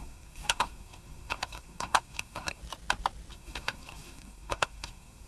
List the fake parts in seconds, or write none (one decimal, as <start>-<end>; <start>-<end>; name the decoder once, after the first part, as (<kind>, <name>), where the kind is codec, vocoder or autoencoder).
0.0-2.6 (codec, SNAC); 3.3-5.3